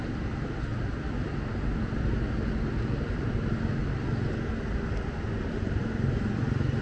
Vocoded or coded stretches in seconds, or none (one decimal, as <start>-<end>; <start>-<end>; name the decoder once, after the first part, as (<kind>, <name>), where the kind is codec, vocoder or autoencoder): none